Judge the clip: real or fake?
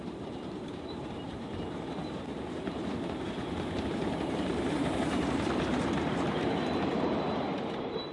fake